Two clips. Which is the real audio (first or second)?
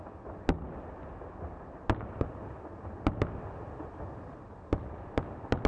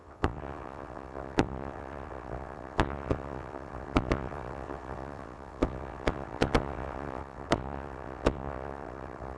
first